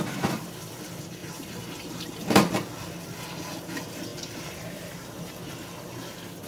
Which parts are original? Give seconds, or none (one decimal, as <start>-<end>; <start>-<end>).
0.0-1.2; 2.7-4.1; 5.3-6.5